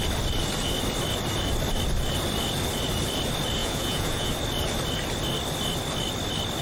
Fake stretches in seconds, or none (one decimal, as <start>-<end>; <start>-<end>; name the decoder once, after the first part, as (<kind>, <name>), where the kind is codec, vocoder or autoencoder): 3.6-4.3 (vocoder, Vocos)